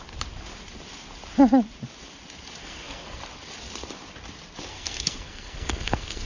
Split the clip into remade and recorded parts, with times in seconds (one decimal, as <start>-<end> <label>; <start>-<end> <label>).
0.0-2.6 recorded; 2.6-3.2 remade; 3.2-4.7 recorded; 4.7-6.3 remade